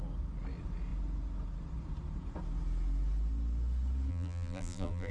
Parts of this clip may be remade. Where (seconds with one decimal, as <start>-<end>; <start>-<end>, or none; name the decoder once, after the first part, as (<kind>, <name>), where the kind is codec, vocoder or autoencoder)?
4.1-5.1 (vocoder, BigVGAN v2)

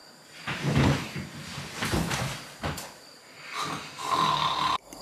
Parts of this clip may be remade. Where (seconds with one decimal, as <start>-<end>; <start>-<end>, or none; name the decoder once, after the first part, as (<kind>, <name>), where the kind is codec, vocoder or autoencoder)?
none